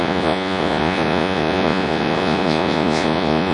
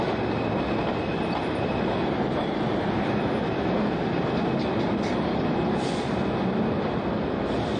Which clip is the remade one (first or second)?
first